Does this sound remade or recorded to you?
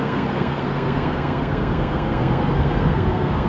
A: remade